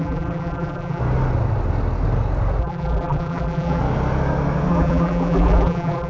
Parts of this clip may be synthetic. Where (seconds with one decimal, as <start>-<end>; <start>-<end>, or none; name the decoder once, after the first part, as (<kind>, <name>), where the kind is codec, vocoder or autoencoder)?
0.0-1.0 (vocoder, BigVGAN v2); 2.6-3.8; 4.7-6.1